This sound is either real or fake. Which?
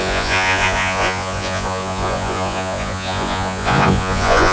fake